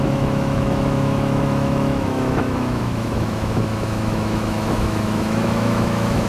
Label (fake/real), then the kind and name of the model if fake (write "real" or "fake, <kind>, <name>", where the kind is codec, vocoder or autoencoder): fake, autoencoder, DAC-VAE